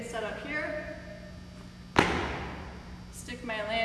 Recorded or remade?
recorded